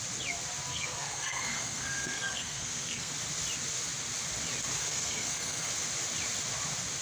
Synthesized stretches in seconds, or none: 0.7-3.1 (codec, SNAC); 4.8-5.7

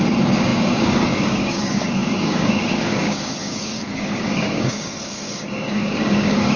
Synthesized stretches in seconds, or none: 0.0-6.6 (codec, DAC)